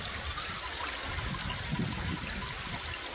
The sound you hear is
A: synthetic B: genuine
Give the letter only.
B